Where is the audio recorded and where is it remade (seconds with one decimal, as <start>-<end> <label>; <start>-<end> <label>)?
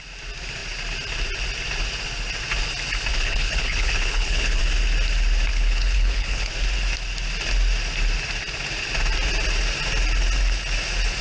0.0-3.1 recorded; 3.1-4.6 remade; 4.6-5.5 recorded; 5.5-6.5 remade; 6.5-11.2 recorded